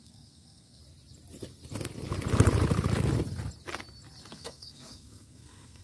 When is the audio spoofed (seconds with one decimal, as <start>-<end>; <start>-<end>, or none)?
0.0-0.8; 4.3-5.8